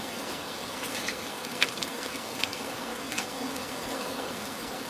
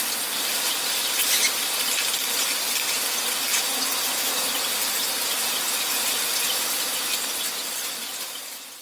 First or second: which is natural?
second